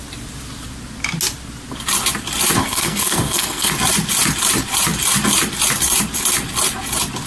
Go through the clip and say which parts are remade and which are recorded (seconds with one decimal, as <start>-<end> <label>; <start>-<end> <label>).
0.0-2.6 recorded; 2.6-3.7 remade; 3.7-7.3 recorded